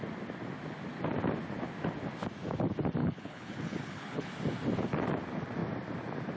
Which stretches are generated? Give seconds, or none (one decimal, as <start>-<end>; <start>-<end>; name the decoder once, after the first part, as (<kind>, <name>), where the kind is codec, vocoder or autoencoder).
3.0-4.3 (codec, HILCodec)